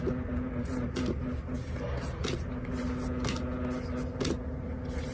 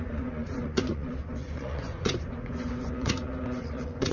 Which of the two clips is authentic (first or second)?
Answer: first